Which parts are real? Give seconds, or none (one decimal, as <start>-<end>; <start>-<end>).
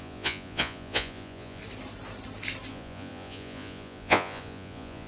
1.6-2.7